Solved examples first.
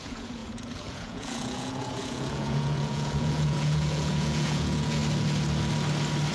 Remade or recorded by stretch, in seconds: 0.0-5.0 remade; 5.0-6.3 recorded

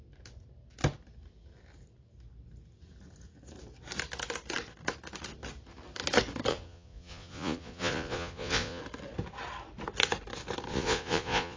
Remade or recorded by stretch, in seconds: 0.0-6.5 recorded; 6.5-8.8 remade; 8.8-10.7 recorded; 10.7-11.6 remade

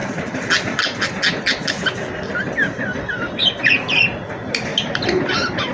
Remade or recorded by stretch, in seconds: 0.0-5.7 recorded

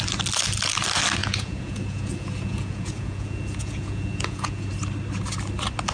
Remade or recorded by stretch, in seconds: 0.0-1.2 recorded; 1.2-4.7 remade; 4.7-5.9 recorded

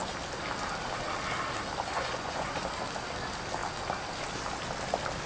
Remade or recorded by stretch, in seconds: 0.0-1.9 recorded; 1.9-2.6 remade; 2.6-5.3 recorded

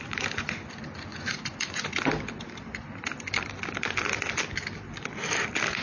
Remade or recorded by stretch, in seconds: 0.0-1.1 recorded; 1.1-1.9 remade; 1.9-5.8 recorded

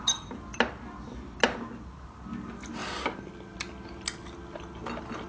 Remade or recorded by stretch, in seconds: 0.0-5.3 recorded